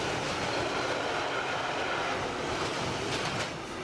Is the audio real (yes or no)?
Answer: yes